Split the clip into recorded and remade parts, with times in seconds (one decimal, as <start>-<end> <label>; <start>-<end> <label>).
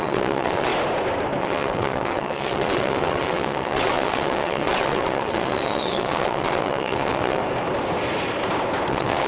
0.0-0.7 remade; 0.7-1.4 recorded; 1.4-7.4 remade; 7.4-8.9 recorded; 8.9-9.3 remade